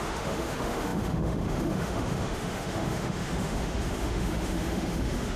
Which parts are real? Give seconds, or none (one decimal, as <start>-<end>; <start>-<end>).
none